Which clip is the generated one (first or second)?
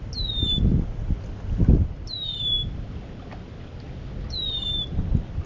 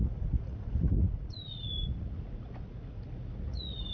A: second